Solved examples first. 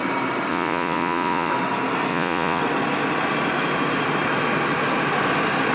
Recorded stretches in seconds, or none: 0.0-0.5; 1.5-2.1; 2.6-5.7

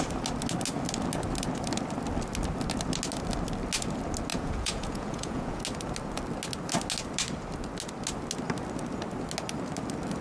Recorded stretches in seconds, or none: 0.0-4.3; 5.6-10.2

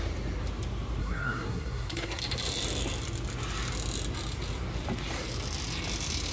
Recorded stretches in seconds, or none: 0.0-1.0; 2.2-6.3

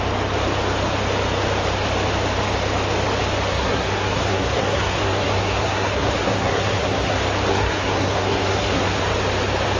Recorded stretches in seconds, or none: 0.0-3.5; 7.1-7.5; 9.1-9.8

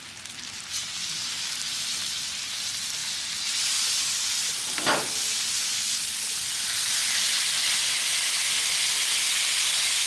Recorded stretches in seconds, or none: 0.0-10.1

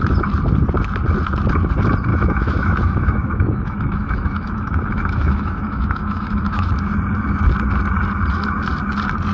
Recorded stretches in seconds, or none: 0.0-2.1; 6.7-9.3

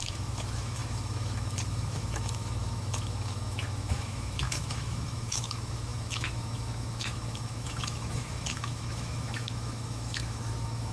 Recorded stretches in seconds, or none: none

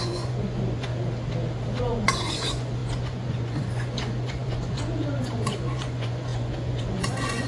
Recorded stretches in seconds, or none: 0.9-1.8